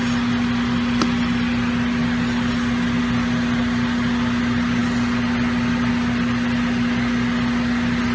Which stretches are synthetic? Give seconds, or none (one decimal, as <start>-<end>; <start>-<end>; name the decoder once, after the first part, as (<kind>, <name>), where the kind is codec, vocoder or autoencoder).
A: none